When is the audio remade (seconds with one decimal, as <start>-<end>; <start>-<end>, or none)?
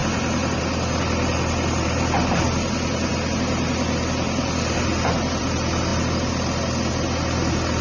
none